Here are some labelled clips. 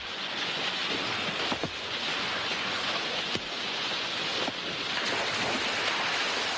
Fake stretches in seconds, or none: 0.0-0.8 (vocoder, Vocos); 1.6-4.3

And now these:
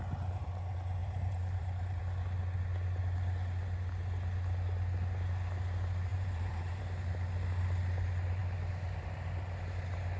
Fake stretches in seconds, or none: 1.0-2.0 (vocoder, BigVGAN v2); 6.1-6.8